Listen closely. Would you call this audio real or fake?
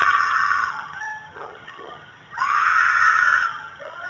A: fake